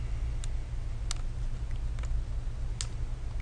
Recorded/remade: recorded